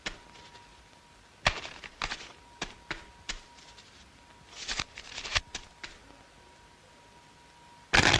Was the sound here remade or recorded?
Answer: recorded